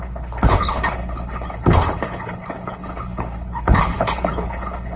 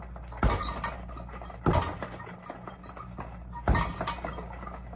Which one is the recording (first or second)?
second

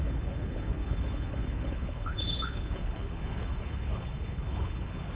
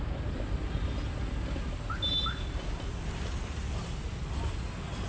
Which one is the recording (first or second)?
second